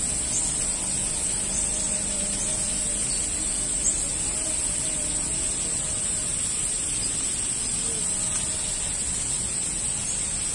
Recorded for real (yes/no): yes